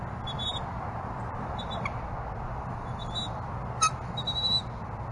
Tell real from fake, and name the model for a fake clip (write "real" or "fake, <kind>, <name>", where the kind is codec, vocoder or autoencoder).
real